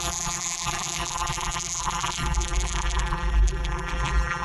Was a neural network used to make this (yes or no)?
yes